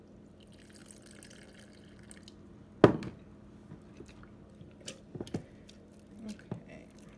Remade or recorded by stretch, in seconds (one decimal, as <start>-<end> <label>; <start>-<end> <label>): 0.0-7.2 recorded